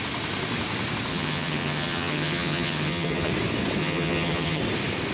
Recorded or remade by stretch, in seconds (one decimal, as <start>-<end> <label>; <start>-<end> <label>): 0.0-1.1 recorded; 1.1-3.3 remade; 3.3-3.8 recorded; 3.8-4.6 remade; 4.6-5.1 recorded